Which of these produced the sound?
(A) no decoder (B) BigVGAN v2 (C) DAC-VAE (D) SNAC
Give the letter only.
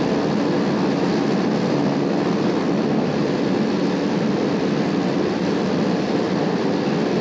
A